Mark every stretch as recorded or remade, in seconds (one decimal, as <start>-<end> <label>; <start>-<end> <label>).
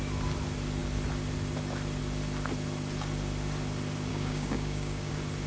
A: 0.0-4.1 recorded; 4.1-5.1 remade; 5.1-5.5 recorded